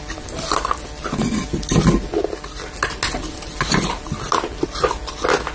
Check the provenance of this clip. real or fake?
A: real